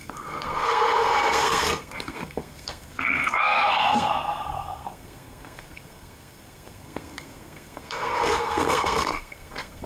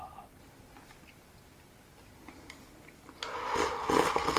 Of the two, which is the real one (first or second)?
second